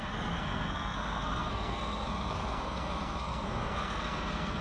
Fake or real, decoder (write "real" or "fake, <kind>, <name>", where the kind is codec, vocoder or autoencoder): fake, codec, SNAC